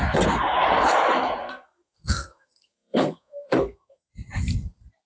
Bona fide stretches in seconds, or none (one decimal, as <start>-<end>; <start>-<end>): 0.0-1.4; 4.1-5.1